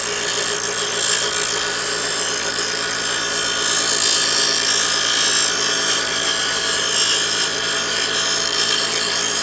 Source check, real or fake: real